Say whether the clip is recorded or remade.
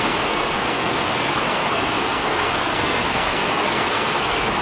remade